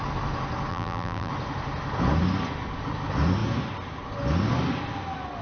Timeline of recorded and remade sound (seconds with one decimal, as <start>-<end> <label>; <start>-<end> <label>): 0.0-0.7 recorded; 0.7-1.3 remade; 1.3-5.4 recorded